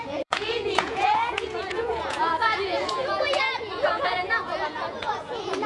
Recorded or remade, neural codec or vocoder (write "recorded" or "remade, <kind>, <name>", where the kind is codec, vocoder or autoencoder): remade, vocoder, Vocos